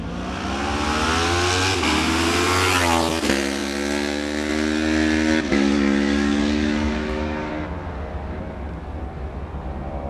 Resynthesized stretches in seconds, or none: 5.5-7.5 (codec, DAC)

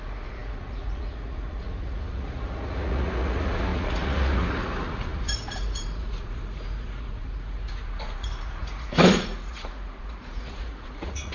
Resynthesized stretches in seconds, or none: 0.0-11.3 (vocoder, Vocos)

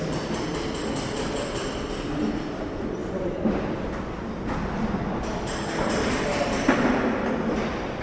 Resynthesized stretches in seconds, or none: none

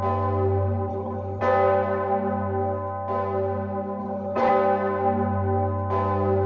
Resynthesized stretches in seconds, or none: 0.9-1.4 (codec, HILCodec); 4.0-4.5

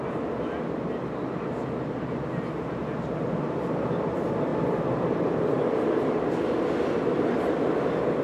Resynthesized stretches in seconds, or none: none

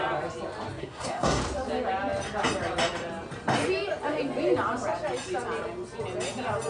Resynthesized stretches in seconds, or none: 0.8-1.4 (codec, SNAC)

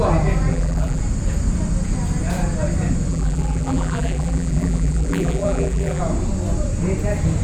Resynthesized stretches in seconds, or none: 0.5-1.0 (vocoder, BigVGAN v2); 3.1-6.0